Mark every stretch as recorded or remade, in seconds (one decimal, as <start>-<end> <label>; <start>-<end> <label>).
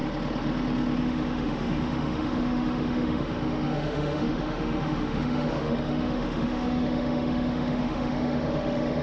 0.0-1.0 recorded; 1.0-9.0 remade